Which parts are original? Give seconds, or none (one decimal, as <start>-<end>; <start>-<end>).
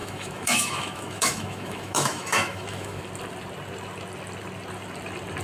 3.0-5.4